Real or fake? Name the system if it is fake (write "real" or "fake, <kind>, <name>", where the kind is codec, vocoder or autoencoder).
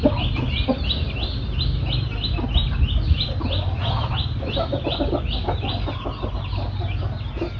real